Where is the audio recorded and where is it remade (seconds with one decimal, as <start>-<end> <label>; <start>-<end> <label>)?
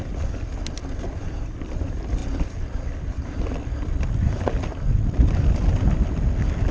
0.0-6.7 recorded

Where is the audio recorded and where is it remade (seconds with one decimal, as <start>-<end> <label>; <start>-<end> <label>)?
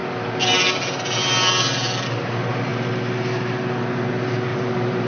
0.0-4.5 recorded; 4.5-5.1 remade